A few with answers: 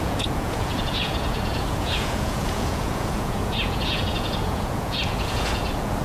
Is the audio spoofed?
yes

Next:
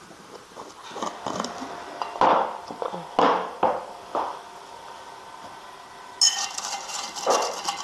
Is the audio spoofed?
no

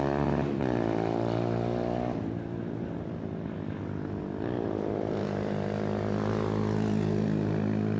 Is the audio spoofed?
no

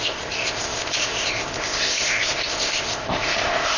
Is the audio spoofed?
yes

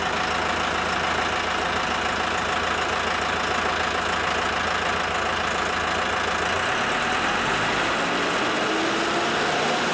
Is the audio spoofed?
no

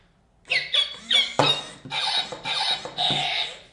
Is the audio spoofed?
no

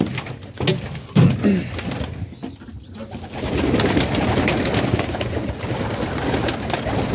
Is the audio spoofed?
no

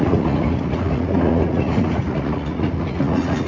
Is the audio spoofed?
yes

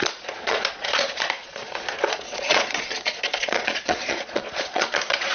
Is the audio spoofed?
yes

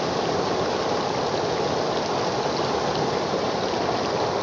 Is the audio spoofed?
no